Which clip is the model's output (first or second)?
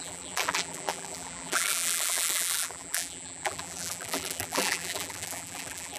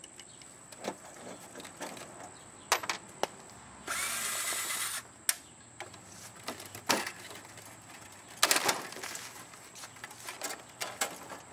first